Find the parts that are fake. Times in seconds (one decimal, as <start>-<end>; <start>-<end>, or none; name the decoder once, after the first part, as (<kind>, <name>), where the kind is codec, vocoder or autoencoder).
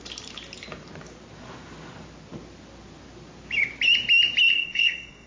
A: 4.5-5.3 (codec, SNAC)